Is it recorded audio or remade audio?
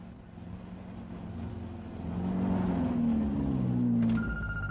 recorded